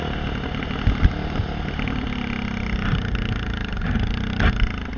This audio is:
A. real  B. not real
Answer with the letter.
A